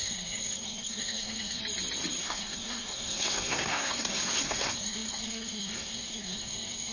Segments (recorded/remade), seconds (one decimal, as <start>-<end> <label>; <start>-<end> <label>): 0.0-1.6 remade; 1.6-2.2 recorded; 2.2-6.9 remade